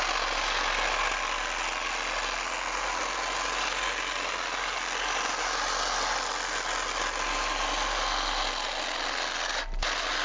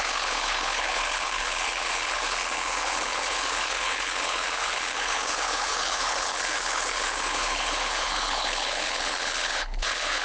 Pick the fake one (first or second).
second